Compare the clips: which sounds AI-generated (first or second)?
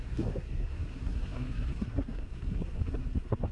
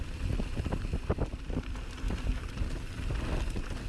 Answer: first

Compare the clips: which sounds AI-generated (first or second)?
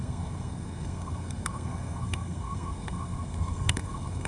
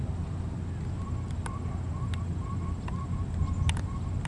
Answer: first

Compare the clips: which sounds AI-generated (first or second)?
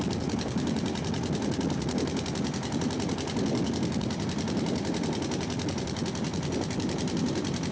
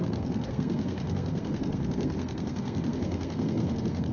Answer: second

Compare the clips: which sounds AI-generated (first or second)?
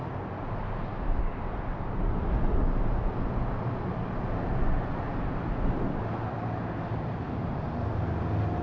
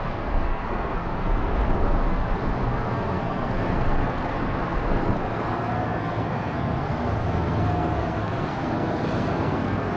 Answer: second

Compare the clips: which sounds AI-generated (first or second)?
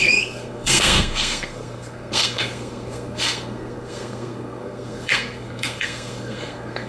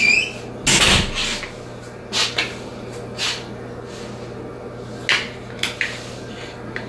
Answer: first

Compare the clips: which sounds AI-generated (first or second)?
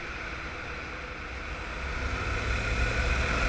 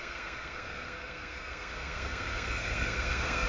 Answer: second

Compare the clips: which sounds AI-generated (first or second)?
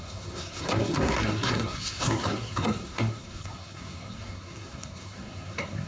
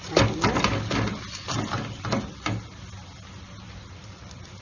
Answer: first